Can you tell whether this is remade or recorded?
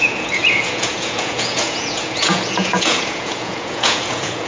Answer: remade